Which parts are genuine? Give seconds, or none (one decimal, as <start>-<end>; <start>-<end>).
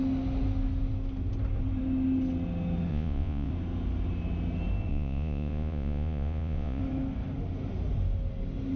0.0-2.9; 3.5-4.9; 6.8-8.8